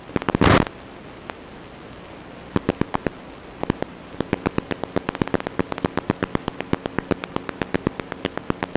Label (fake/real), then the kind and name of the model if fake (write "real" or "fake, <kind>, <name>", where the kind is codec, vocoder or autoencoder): real